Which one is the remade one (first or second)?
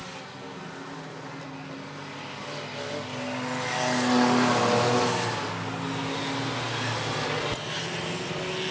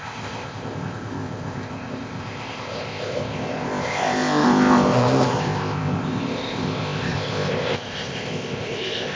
second